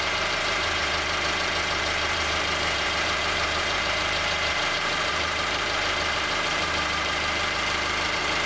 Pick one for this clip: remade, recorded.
remade